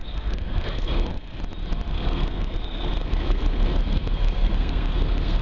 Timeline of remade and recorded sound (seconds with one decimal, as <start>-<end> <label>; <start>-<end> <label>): 0.0-1.4 remade; 1.4-1.9 recorded; 1.9-5.4 remade